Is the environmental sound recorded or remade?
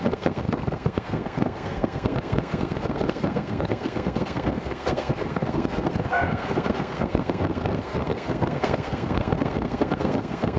remade